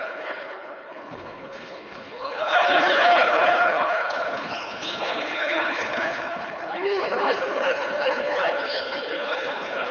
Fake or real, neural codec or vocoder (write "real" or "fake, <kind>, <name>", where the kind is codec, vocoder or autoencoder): fake, codec, HILCodec